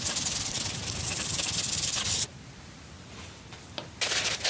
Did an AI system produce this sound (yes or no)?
yes